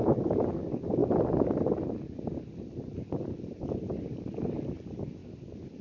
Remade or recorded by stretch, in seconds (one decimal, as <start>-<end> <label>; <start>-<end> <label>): 0.0-5.8 recorded